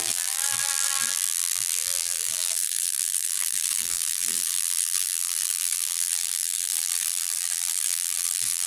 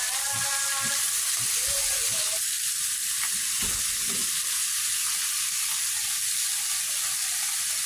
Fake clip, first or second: first